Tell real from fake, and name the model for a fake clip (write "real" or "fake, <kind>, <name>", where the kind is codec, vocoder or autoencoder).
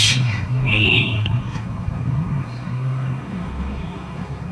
fake, codec, SNAC